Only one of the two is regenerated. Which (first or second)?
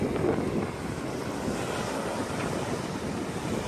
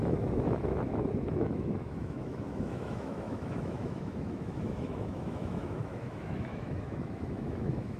second